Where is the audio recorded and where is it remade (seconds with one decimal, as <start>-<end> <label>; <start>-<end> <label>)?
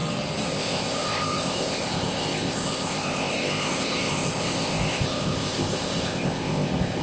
0.0-0.5 recorded; 0.5-7.0 remade